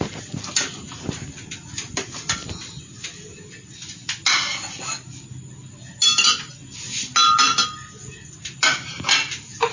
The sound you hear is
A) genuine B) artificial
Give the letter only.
A